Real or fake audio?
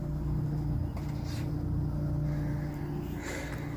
real